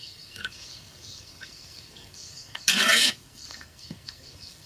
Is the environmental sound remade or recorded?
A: remade